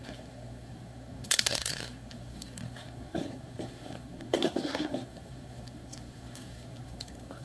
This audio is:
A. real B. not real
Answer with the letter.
B